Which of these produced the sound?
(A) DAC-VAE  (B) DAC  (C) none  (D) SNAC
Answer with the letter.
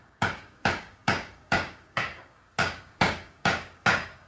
B